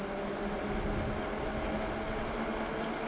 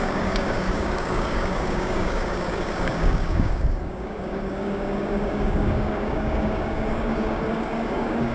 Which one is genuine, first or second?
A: first